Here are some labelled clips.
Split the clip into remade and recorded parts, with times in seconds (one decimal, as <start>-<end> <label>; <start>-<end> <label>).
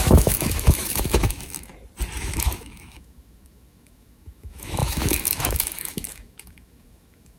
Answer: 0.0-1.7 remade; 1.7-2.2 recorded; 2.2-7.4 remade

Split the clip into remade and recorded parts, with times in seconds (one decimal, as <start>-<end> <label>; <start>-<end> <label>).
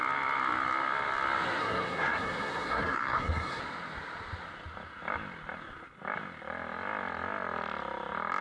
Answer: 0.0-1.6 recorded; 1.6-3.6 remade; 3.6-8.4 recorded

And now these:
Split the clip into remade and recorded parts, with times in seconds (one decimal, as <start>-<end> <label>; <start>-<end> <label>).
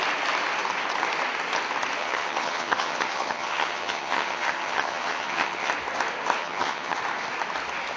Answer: 0.0-2.0 recorded; 2.0-5.7 remade; 5.7-6.4 recorded; 6.4-7.0 remade; 7.0-8.0 recorded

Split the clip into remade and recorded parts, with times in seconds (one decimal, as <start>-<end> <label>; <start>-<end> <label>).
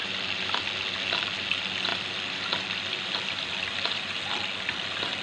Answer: 0.0-0.6 remade; 0.6-1.9 recorded; 1.9-5.2 remade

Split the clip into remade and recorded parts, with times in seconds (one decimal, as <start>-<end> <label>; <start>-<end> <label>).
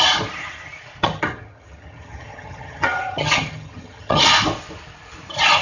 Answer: 0.0-1.0 recorded; 1.0-4.2 remade; 4.2-5.6 recorded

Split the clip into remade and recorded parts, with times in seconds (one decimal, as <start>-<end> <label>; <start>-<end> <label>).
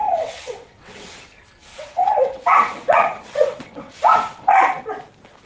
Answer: 0.0-1.1 remade; 1.1-1.7 recorded; 1.7-4.8 remade; 4.8-5.5 recorded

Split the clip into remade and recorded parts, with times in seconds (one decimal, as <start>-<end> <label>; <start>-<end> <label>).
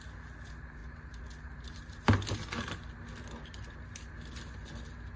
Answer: 0.0-5.2 recorded